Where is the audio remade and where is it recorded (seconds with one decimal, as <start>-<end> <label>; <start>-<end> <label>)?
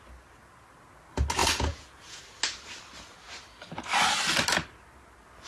0.0-1.4 recorded; 1.4-2.2 remade; 2.2-5.5 recorded